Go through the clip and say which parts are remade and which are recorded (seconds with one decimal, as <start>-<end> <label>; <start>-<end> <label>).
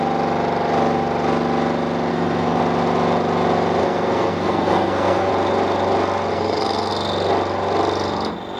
0.0-2.1 recorded; 2.1-2.6 remade; 2.6-3.8 recorded; 3.8-5.3 remade; 5.3-6.3 recorded; 6.3-6.9 remade; 6.9-8.6 recorded